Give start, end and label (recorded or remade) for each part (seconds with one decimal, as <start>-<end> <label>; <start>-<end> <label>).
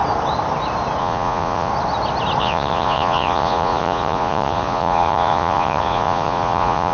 0.0-1.0 recorded; 1.0-1.7 remade; 1.7-2.4 recorded; 2.4-6.9 remade